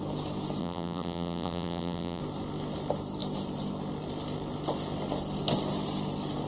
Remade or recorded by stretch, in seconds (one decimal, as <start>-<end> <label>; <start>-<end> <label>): 0.0-0.6 recorded; 0.6-2.2 remade; 2.2-6.5 recorded